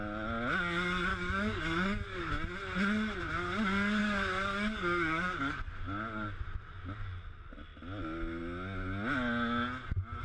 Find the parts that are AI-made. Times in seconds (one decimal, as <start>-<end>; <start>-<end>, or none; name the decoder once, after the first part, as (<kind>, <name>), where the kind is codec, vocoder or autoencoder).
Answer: 1.1-2.3 (codec, DAC); 4.0-5.7